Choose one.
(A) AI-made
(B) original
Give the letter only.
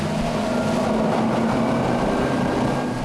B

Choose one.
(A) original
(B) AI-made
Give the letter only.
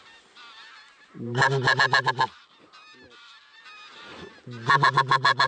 A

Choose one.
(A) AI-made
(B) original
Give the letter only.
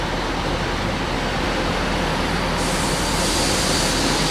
B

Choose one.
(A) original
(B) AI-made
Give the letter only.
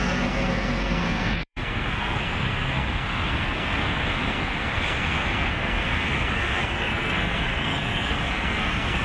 B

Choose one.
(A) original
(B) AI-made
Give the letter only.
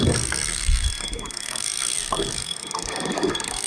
B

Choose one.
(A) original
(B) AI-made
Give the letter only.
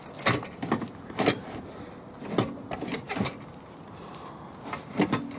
A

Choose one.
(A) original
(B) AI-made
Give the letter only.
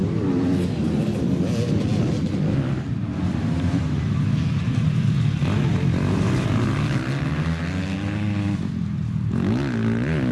A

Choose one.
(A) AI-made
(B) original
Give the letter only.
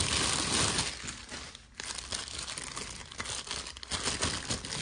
B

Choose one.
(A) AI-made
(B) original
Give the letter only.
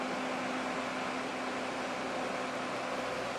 B